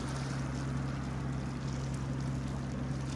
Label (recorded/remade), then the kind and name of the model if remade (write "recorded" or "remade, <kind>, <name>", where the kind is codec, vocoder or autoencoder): recorded